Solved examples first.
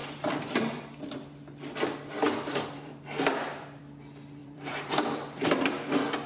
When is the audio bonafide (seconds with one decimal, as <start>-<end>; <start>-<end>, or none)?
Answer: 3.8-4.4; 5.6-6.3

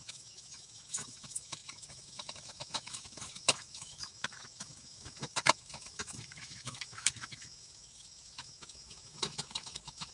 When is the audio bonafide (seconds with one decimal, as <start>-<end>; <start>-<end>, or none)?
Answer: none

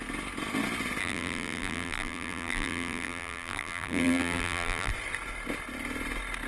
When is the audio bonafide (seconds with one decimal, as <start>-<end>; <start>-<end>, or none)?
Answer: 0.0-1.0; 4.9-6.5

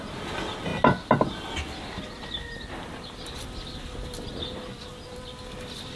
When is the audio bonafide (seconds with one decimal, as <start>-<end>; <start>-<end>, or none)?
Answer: 0.0-6.0